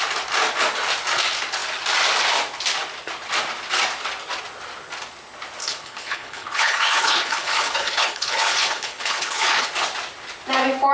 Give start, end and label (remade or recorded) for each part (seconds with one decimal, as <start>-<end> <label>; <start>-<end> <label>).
0.0-5.6 recorded; 5.6-9.7 remade; 9.7-10.9 recorded